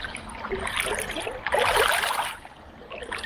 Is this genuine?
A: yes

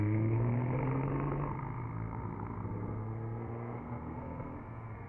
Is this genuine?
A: no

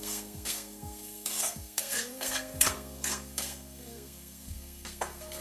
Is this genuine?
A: no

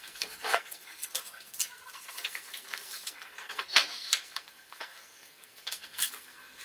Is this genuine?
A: no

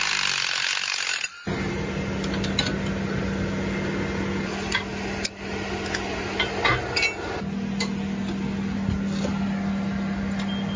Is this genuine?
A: yes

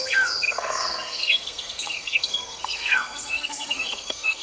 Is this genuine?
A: no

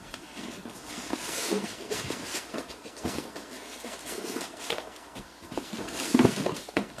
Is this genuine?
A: no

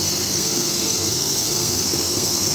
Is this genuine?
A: no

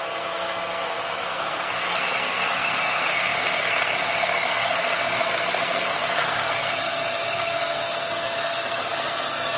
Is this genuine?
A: no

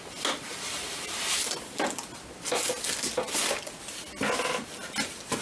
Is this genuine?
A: yes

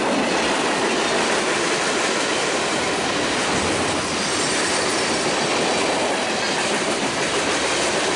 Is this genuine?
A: yes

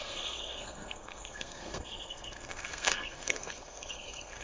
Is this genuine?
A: no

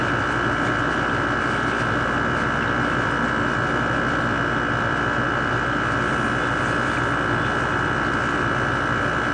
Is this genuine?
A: yes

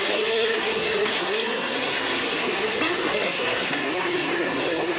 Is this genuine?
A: no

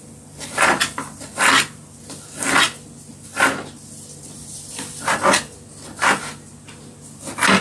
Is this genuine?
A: yes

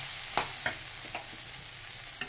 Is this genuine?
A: yes